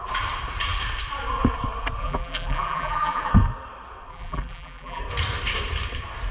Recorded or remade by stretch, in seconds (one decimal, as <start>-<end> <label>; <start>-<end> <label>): 0.0-2.0 recorded; 2.0-3.3 remade; 3.3-4.1 recorded; 4.1-5.0 remade; 5.0-6.3 recorded